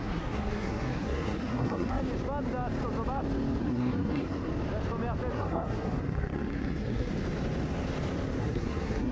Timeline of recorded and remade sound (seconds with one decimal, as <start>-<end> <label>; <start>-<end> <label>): 0.0-2.0 remade; 2.0-3.6 recorded; 3.6-4.5 remade; 4.5-5.3 recorded; 5.3-7.1 remade; 7.1-8.4 recorded; 8.4-9.1 remade